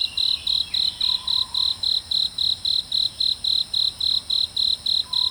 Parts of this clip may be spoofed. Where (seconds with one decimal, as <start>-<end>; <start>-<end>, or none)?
0.0-3.2